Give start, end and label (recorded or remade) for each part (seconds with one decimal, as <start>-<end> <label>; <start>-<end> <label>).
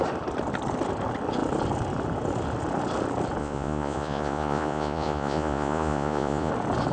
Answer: 0.0-3.4 recorded; 3.4-6.5 remade; 6.5-6.9 recorded